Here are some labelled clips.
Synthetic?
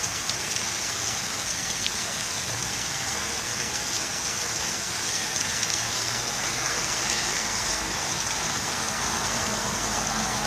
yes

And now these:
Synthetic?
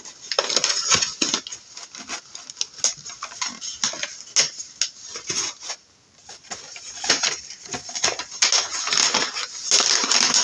no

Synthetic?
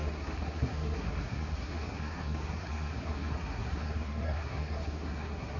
yes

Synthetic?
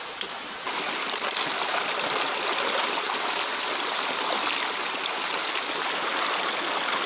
no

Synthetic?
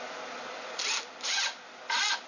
no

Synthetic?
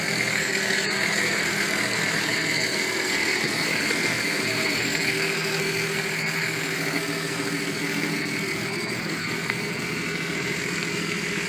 yes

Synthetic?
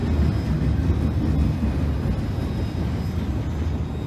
no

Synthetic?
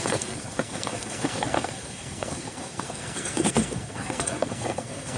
yes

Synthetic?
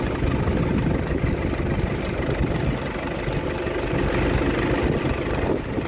no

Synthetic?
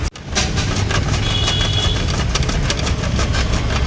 no